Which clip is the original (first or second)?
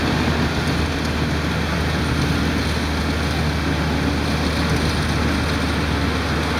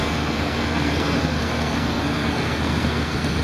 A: first